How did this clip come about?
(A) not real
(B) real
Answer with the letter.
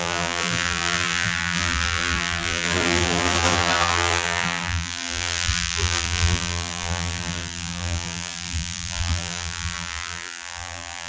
A